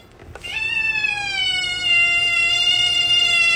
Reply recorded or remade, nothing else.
recorded